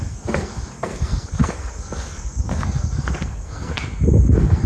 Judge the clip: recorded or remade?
remade